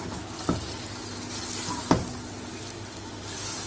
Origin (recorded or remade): recorded